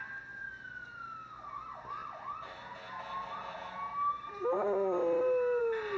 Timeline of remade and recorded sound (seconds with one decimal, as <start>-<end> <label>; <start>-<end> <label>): 0.0-6.0 recorded